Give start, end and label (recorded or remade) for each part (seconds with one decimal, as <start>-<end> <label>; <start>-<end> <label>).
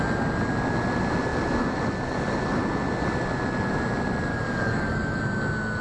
0.0-4.3 recorded; 4.3-5.2 remade; 5.2-5.8 recorded